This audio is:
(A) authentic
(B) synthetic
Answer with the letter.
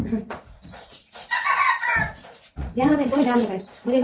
B